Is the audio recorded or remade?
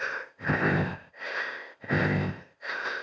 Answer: remade